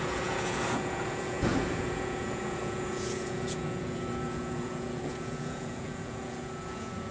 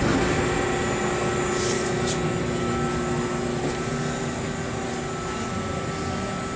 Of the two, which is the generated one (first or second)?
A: first